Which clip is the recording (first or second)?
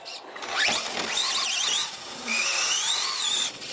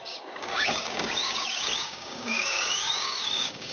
first